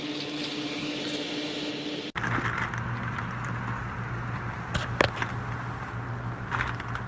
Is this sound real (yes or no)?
yes